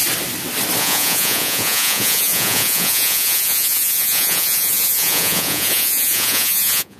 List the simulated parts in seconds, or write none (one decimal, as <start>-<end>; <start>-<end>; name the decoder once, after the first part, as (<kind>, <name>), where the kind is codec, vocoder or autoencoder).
0.8-7.0 (vocoder, Vocos)